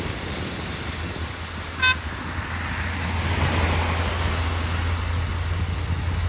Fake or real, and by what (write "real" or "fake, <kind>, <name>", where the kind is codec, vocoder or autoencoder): real